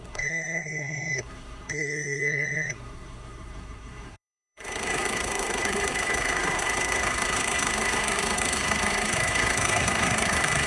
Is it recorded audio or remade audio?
remade